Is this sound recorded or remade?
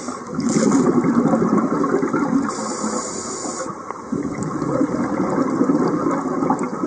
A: recorded